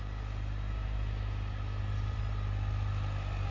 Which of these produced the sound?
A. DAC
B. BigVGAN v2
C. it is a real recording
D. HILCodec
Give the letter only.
C